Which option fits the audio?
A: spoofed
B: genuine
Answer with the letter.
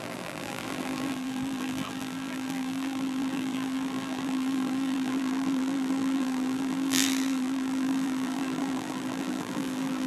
A